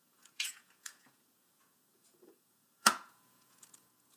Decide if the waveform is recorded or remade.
remade